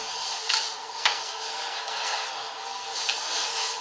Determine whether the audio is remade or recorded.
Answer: remade